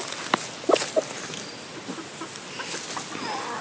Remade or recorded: recorded